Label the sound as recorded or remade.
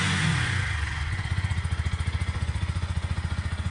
remade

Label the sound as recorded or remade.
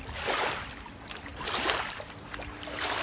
recorded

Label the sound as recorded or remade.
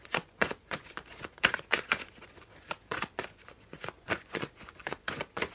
remade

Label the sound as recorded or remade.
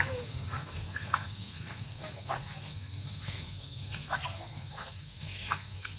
remade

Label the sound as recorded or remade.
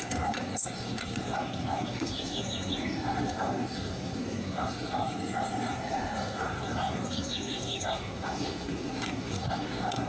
remade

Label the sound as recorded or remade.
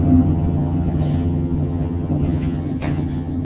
remade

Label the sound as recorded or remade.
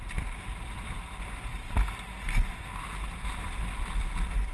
recorded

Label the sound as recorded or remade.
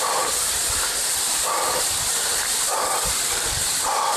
recorded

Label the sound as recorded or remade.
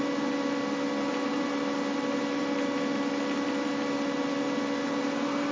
recorded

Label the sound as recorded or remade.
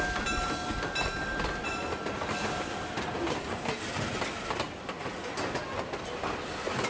recorded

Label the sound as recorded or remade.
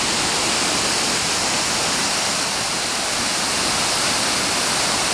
recorded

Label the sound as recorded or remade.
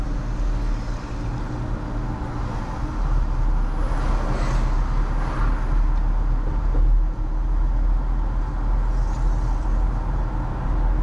recorded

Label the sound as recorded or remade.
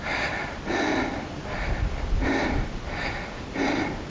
recorded